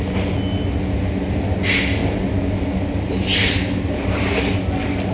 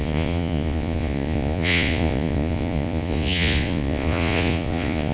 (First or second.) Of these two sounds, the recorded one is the first